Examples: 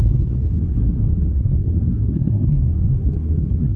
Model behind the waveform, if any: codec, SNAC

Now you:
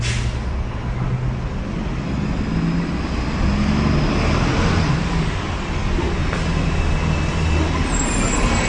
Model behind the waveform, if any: none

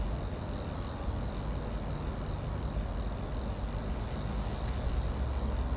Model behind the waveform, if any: none